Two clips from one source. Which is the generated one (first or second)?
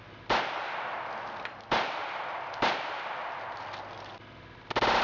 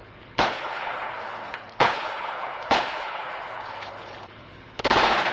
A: second